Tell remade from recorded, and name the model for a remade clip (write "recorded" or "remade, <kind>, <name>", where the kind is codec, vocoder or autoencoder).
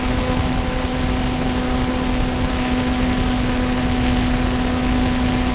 recorded